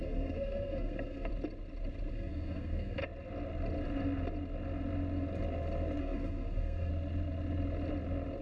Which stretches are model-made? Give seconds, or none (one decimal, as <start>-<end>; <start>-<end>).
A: 0.0-1.3; 2.1-3.0; 6.0-6.9